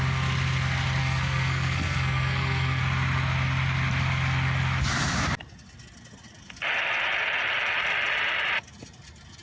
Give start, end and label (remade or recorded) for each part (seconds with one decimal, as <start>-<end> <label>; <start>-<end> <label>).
0.0-1.0 recorded; 1.0-2.8 remade; 2.8-9.4 recorded